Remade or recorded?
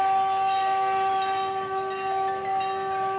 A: recorded